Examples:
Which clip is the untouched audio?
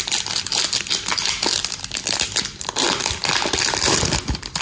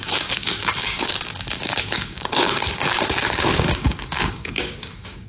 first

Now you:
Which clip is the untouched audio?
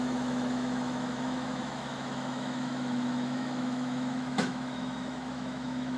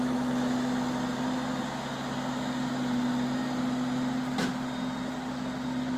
second